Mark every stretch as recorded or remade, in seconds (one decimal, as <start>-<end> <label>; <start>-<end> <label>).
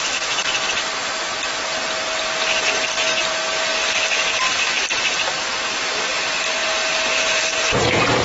0.0-8.2 recorded